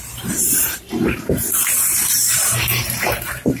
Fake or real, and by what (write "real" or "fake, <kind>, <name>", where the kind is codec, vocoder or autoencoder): fake, vocoder, BigVGAN v2